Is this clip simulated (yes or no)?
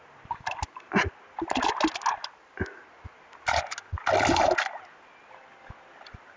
no